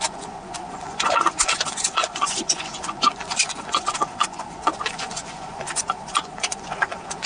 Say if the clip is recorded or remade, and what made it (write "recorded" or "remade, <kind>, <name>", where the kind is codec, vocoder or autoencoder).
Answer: remade, vocoder, Vocos